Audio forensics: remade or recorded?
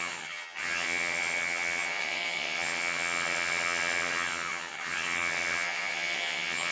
remade